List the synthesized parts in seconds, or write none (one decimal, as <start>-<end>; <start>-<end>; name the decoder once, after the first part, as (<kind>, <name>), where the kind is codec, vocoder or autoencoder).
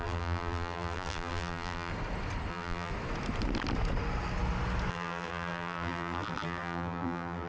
0.0-1.9 (vocoder, BigVGAN v2); 2.5-2.9; 4.9-7.5